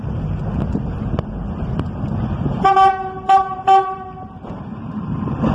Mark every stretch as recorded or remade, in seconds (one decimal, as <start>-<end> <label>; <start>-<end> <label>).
0.0-4.7 recorded; 4.7-5.5 remade